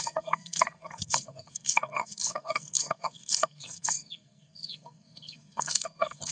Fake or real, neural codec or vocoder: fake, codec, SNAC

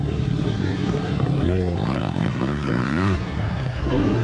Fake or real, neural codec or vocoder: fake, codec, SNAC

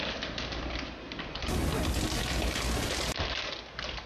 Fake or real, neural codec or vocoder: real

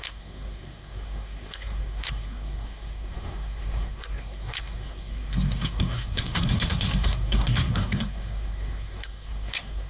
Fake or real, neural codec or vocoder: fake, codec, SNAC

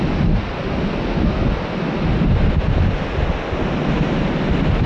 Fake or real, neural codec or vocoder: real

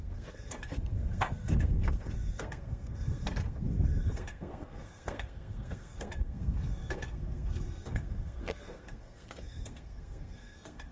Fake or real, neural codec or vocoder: fake, codec, SNAC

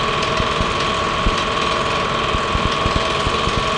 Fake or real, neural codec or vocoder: real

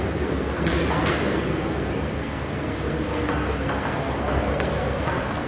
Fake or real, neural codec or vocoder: fake, codec, SNAC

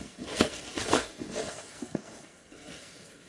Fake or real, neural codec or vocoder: fake, codec, SNAC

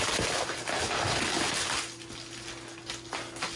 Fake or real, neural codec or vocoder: real